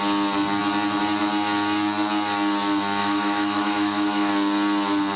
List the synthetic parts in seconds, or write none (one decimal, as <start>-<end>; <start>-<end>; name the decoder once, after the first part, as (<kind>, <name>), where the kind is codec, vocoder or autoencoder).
3.0-4.3 (autoencoder, DAC-VAE)